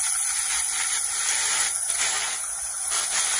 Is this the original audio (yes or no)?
yes